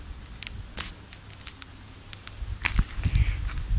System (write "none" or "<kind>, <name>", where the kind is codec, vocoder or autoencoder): none